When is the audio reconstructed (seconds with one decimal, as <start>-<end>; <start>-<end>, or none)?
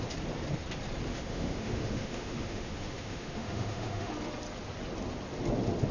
1.1-4.1